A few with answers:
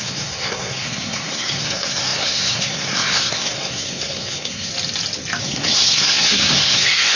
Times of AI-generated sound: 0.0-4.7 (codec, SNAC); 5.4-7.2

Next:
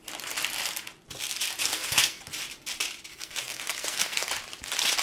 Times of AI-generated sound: 1.6-2.2 (codec, SNAC); 3.1-4.3

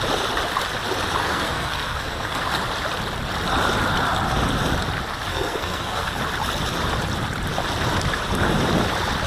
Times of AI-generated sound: 1.2-2.5 (codec, SNAC); 5.3-6.2

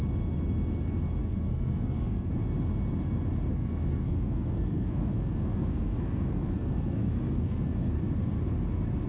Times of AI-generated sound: 1.2-2.3 (codec, SNAC); 3.5-8.0